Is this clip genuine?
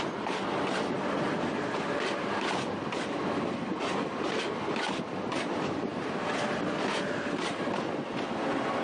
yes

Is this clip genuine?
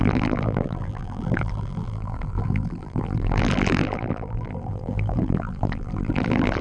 no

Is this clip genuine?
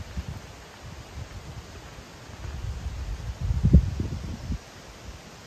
yes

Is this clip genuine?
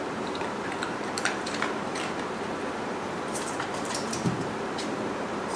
no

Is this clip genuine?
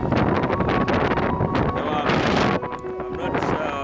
yes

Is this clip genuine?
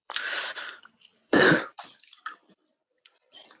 no